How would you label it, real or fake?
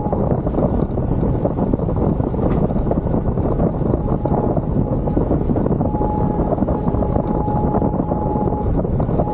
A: real